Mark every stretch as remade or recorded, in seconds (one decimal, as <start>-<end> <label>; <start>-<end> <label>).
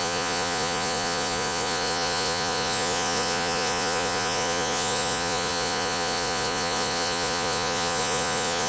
0.0-8.7 remade